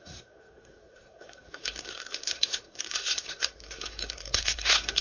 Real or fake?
fake